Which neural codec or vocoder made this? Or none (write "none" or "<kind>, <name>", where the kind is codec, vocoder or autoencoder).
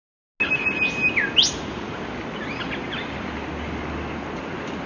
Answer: none